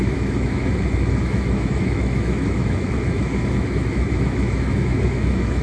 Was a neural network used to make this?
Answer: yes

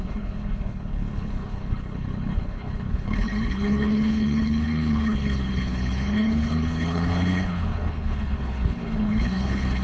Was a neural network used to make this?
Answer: yes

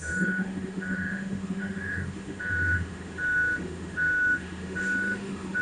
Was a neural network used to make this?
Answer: yes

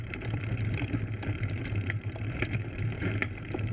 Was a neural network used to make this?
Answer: yes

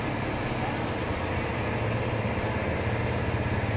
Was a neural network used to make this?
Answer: no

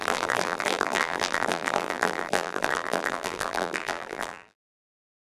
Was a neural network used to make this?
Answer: yes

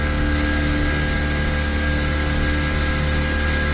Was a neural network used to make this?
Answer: no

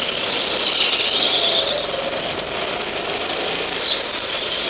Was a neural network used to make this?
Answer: no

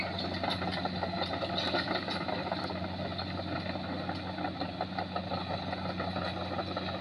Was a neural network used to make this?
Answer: no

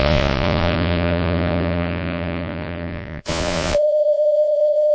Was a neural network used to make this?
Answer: yes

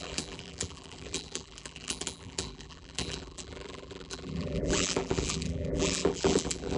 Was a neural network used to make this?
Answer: yes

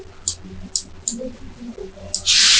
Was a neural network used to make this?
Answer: no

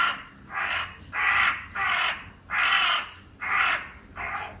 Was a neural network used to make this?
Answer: no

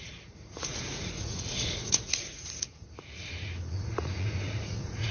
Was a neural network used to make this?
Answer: yes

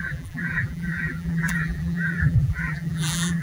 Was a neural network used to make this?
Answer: yes